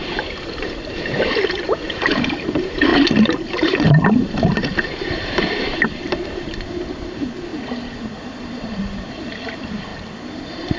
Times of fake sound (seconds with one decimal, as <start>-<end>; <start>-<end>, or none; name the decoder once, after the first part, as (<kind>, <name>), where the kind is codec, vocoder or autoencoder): 0.0-7.5 (vocoder, BigVGAN v2); 8.1-10.8